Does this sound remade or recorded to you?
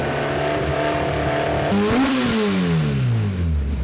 recorded